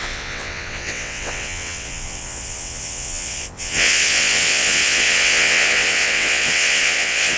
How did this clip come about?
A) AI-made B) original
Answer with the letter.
A